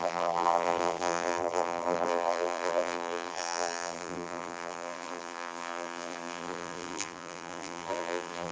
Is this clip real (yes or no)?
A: no